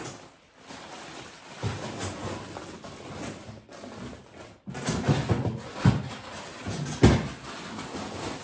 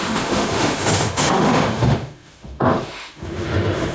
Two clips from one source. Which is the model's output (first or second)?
second